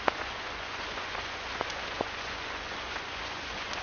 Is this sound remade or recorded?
remade